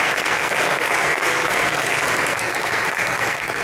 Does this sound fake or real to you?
fake